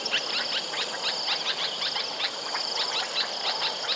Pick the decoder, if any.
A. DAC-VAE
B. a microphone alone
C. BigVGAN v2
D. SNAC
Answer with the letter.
B